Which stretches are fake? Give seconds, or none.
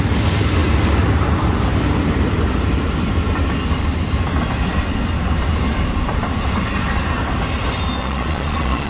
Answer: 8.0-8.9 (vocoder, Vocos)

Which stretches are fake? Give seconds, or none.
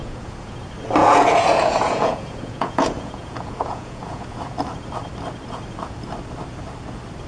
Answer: 0.0-0.6 (vocoder, Vocos); 1.0-4.6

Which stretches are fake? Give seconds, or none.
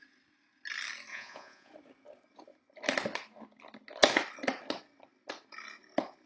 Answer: 1.1-1.7 (vocoder, Vocos)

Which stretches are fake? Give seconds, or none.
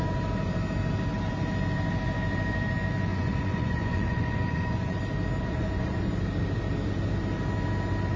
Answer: 3.1-5.0 (vocoder, Vocos); 5.4-6.1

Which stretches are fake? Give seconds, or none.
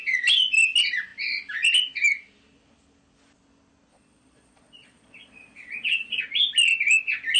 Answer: 3.9-6.2 (vocoder, Vocos)